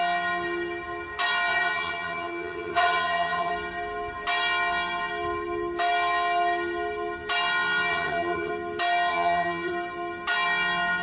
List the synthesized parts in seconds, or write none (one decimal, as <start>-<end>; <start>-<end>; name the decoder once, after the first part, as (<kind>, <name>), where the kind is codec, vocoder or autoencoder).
1.5-3.5 (vocoder, HiFi-GAN); 7.9-8.5; 9.1-9.7